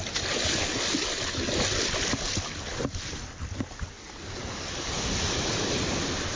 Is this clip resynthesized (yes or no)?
no